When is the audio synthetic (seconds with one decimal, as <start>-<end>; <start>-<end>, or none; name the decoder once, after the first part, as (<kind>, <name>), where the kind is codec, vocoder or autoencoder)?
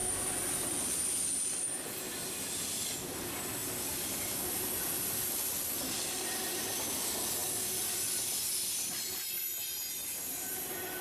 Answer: 0.0-0.8 (vocoder, BigVGAN v2); 3.6-6.6